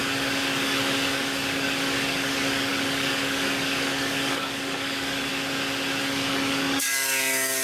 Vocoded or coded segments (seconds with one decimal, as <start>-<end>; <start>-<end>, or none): 0.0-5.3; 6.0-7.6